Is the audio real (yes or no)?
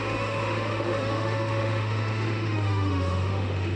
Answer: no